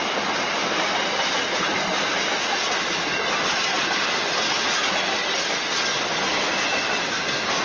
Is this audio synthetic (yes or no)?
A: no